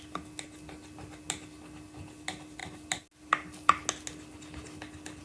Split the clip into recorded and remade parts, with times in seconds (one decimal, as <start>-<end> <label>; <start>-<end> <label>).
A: 0.0-5.2 recorded